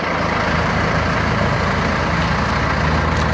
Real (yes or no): yes